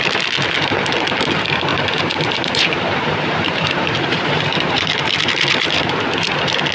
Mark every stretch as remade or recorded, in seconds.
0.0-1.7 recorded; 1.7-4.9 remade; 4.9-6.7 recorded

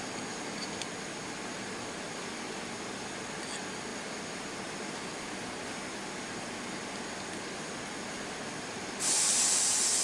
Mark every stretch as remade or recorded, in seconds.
0.0-10.0 recorded

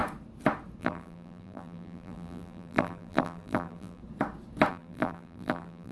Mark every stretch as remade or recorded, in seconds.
0.0-0.8 recorded; 0.8-4.0 remade; 4.0-4.7 recorded; 4.7-5.9 remade

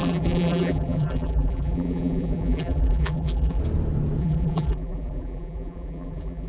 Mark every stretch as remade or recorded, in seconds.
0.0-3.6 remade; 3.6-4.2 recorded; 4.2-6.5 remade

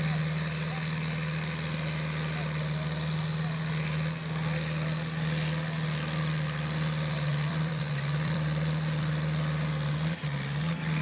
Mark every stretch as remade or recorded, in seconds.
0.0-7.3 recorded; 7.3-9.1 remade; 9.1-11.0 recorded